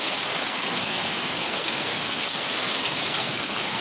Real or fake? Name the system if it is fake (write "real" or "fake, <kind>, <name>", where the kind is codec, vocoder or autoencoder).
fake, codec, SNAC